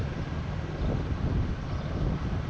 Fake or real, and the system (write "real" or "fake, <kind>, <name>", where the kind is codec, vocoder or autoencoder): real